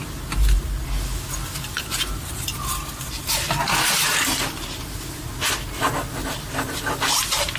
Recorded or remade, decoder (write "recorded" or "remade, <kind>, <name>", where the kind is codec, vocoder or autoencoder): recorded